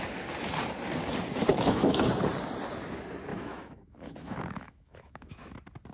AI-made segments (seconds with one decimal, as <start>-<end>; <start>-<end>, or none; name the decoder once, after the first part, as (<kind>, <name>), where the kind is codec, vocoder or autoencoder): 1.5-2.1 (autoencoder, DAC-VAE); 3.3-5.5